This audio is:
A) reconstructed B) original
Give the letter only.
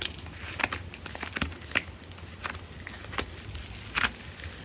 B